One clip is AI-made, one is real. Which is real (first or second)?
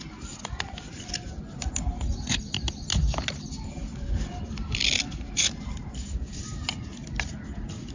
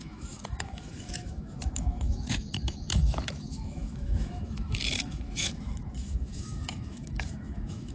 first